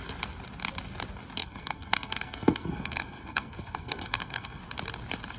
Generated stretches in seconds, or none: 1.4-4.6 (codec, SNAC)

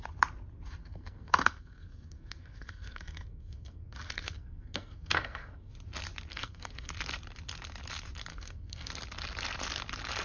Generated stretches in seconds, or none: 0.8-5.7 (codec, SNAC); 6.3-6.9; 8.3-8.9

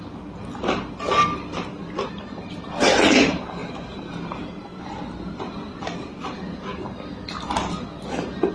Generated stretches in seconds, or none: none

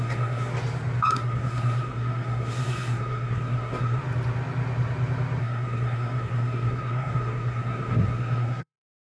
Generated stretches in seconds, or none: 0.0-0.5 (codec, SNAC); 1.1-4.0; 5.4-9.1

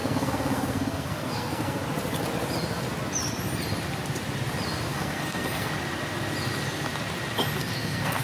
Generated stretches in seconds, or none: 0.0-1.8 (codec, SNAC); 4.9-5.7; 7.6-8.2

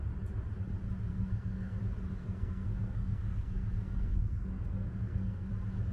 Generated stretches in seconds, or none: 1.1-1.8 (codec, SNAC); 2.2-5.5